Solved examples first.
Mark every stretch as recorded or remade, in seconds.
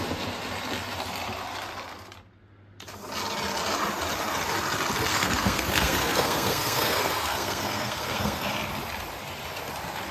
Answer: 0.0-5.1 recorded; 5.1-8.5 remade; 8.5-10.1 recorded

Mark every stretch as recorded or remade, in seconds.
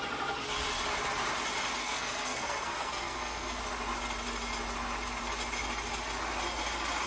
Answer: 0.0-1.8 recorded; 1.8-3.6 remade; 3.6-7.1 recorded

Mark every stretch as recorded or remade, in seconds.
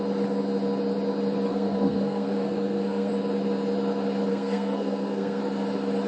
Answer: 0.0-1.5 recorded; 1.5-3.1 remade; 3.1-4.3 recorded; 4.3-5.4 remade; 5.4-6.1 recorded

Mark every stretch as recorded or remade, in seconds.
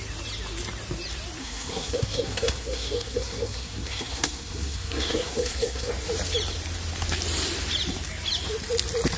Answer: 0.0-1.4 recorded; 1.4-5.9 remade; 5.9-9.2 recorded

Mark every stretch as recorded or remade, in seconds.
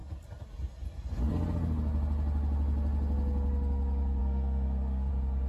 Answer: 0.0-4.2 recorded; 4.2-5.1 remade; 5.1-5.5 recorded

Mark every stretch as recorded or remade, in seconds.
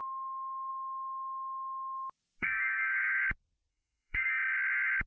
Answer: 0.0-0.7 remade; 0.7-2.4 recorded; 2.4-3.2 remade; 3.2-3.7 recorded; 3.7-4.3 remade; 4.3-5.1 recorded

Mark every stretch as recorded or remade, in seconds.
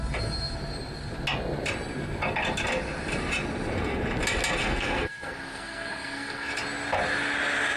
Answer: 0.0-4.6 recorded; 4.6-6.5 remade; 6.5-7.8 recorded